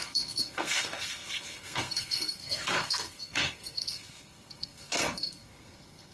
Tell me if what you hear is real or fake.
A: fake